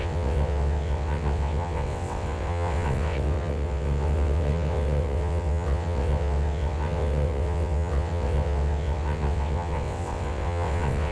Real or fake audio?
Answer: fake